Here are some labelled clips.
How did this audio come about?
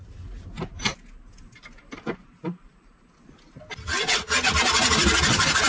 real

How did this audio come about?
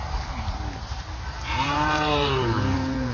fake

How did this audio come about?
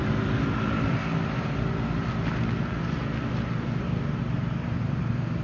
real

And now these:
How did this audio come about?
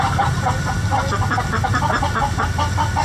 real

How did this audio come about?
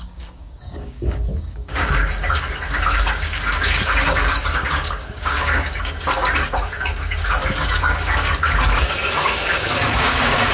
fake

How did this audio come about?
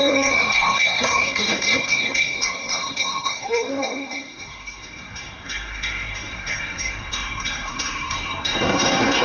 fake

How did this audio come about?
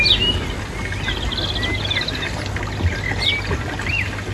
real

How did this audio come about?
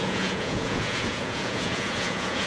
fake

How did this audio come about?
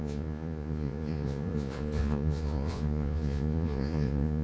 fake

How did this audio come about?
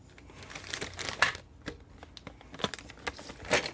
real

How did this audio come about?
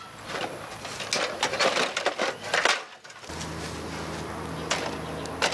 real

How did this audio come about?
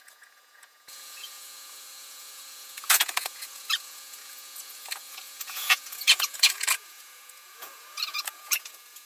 fake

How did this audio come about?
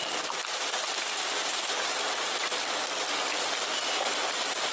fake